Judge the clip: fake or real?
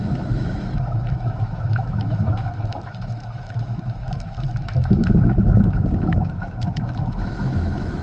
fake